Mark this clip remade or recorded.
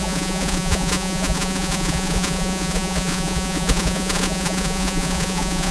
remade